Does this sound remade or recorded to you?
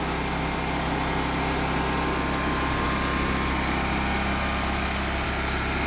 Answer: recorded